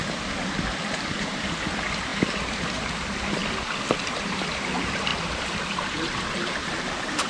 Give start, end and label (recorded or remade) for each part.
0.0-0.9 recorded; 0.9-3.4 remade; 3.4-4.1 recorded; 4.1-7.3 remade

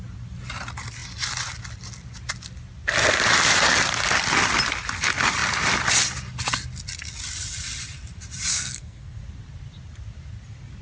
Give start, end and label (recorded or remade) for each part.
0.0-8.5 recorded; 8.5-9.2 remade; 9.2-10.8 recorded

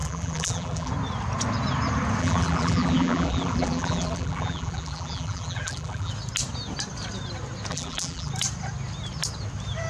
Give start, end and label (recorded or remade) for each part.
0.0-0.9 remade; 0.9-2.2 recorded; 2.2-6.1 remade; 6.1-7.7 recorded; 7.7-8.3 remade; 8.3-9.9 recorded

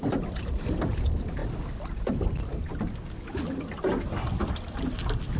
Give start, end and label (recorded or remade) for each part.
0.0-5.4 recorded

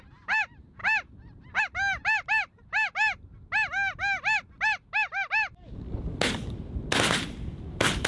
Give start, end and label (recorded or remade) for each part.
0.0-8.1 recorded

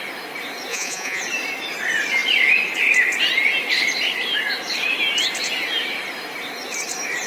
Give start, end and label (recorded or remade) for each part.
0.0-0.7 recorded; 0.7-1.2 remade; 1.2-7.3 recorded

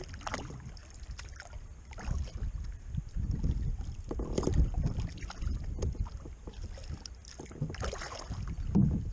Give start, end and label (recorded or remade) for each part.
0.0-9.1 recorded

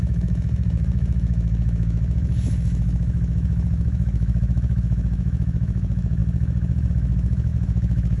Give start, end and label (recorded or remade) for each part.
0.0-8.2 remade